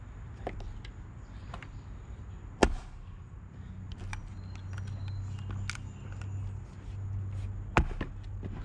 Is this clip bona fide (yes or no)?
yes